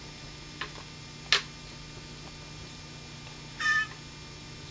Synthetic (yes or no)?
no